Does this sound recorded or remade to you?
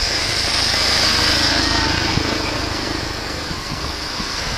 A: remade